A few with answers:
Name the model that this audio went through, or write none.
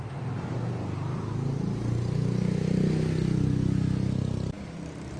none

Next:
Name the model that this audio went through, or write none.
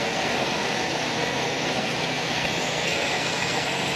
codec, SNAC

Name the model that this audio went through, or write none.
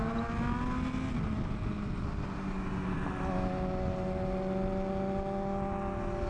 none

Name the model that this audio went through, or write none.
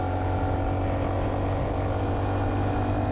none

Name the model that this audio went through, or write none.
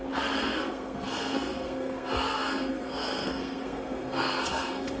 codec, SNAC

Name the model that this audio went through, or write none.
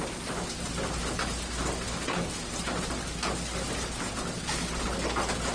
none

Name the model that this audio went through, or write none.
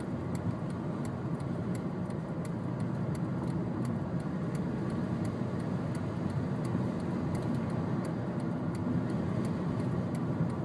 none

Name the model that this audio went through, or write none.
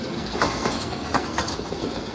codec, SNAC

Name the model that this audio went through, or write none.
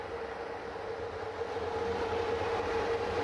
none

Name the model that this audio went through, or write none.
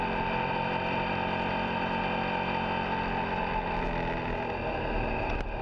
none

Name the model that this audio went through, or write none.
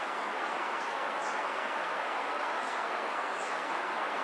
codec, SNAC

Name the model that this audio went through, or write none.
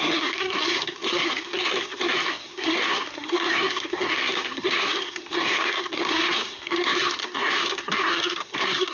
codec, SNAC